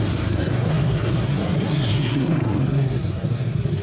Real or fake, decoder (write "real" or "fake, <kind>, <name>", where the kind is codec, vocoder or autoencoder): fake, codec, SNAC